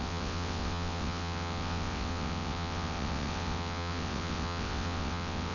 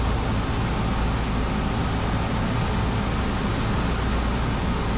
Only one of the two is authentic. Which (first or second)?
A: second